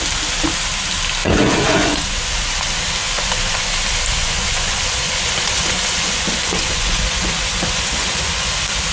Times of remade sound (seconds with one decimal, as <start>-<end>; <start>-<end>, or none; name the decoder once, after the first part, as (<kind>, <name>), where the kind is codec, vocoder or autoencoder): 1.2-2.3 (vocoder, Vocos); 3.0-3.7; 4.2-8.5